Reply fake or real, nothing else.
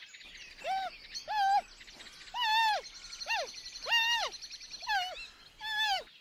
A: real